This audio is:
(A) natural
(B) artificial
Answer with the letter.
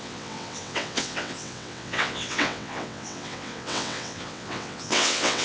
B